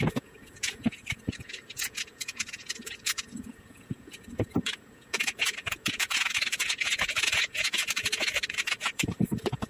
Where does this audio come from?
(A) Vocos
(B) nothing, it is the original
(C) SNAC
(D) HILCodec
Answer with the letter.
A